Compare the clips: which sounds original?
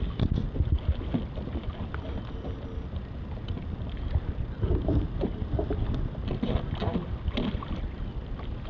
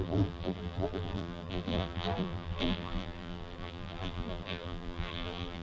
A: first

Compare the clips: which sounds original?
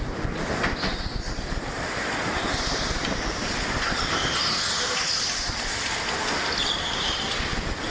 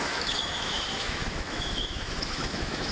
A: first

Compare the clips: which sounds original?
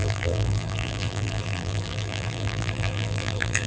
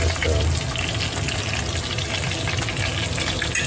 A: second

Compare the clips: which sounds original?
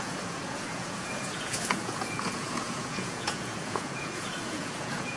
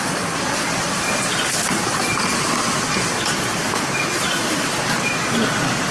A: second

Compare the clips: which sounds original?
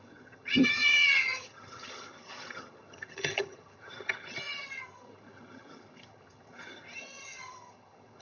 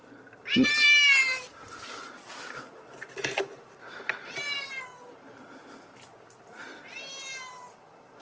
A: second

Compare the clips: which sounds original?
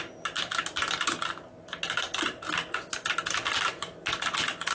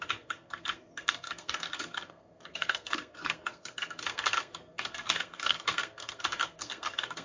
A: first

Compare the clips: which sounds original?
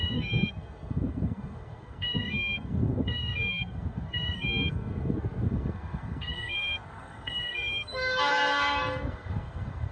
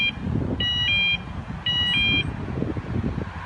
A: second